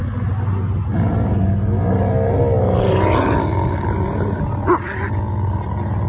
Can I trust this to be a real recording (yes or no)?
yes